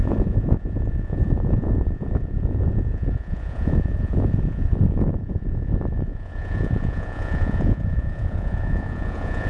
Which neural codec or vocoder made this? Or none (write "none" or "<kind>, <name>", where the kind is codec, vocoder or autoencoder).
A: vocoder, Vocos